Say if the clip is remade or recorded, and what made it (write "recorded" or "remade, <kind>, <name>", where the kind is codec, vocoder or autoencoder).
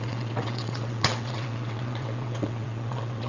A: remade, vocoder, WaveNeXt